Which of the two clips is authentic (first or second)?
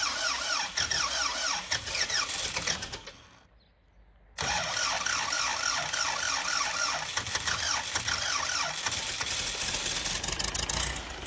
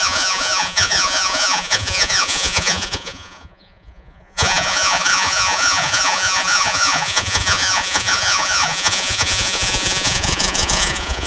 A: first